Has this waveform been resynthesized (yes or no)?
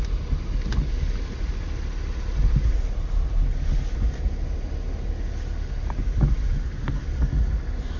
no